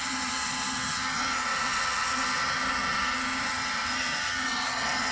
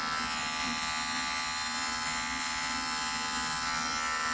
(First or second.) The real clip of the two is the second